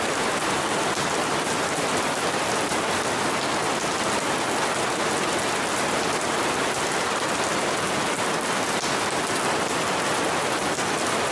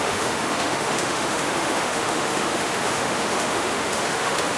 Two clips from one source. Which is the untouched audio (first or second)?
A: first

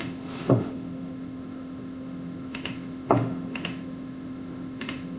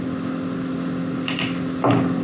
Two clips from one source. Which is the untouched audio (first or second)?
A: second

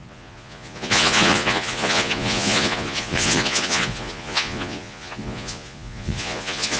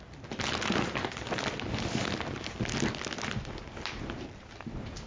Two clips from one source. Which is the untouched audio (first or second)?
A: second